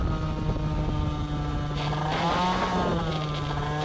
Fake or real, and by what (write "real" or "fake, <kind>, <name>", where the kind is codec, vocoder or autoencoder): real